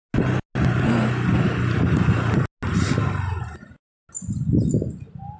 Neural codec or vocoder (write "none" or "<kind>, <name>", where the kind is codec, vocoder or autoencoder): none